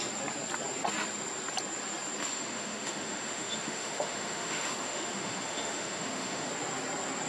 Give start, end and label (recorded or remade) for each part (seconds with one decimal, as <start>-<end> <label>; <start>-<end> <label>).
0.0-2.2 recorded; 2.2-6.5 remade; 6.5-7.3 recorded

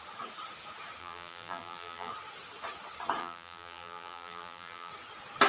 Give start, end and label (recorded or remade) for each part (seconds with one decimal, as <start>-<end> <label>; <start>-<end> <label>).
0.0-1.0 recorded; 1.0-2.1 remade; 2.1-3.2 recorded; 3.2-4.9 remade; 4.9-5.5 recorded

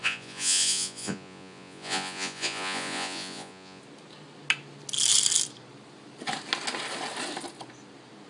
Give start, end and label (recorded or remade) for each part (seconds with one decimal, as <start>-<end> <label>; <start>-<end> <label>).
0.0-3.8 remade; 3.8-8.3 recorded

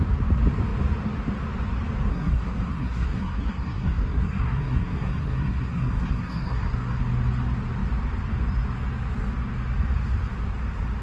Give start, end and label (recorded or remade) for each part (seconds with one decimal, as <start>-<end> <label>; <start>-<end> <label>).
0.0-2.1 recorded; 2.1-7.0 remade; 7.0-11.0 recorded